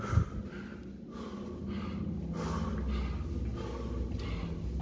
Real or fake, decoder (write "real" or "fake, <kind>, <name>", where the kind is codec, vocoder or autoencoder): real